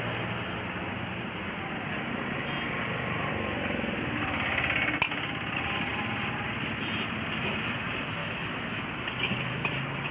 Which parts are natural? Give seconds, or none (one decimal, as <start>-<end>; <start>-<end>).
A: 0.0-8.2; 8.8-10.1